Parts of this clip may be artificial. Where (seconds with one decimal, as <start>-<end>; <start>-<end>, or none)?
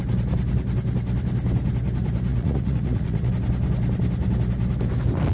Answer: 2.3-3.3